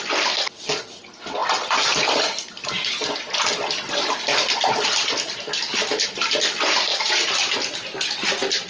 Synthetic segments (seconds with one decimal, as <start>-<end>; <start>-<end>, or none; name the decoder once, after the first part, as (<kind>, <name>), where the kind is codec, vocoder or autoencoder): none